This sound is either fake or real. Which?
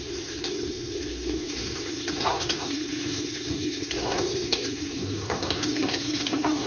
fake